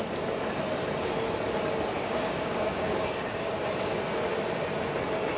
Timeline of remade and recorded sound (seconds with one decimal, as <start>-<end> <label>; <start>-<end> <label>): 0.0-2.0 recorded; 2.0-3.5 remade; 3.5-5.4 recorded